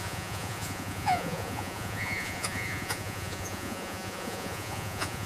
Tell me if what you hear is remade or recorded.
remade